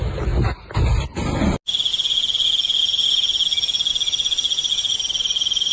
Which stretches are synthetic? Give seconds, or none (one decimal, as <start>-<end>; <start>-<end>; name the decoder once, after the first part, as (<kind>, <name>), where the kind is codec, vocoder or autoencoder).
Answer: none